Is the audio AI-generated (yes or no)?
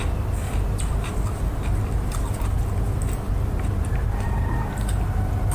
no